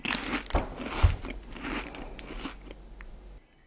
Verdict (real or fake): real